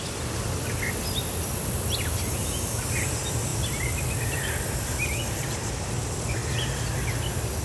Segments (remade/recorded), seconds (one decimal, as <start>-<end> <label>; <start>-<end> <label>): 0.0-7.6 recorded